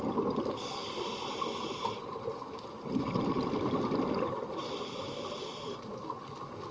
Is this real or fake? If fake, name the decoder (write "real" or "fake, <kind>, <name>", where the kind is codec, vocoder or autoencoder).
real